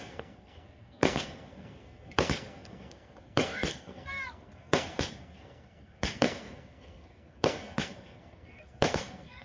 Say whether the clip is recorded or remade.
remade